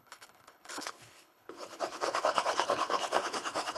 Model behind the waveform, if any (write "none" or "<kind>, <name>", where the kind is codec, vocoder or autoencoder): codec, HILCodec